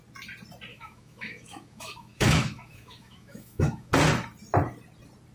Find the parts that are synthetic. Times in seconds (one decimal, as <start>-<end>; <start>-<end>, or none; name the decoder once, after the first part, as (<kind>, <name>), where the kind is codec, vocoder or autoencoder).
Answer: 0.7-3.9 (autoencoder, DAC-VAE)